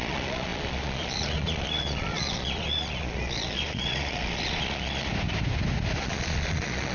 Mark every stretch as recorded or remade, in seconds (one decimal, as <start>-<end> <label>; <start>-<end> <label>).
0.0-5.1 remade; 5.1-6.0 recorded; 6.0-6.9 remade